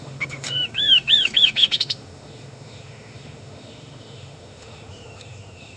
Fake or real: fake